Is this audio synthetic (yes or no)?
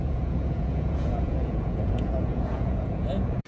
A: yes